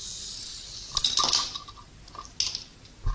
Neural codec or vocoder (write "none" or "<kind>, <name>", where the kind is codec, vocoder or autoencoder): none